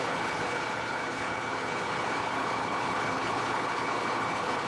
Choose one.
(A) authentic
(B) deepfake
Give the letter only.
B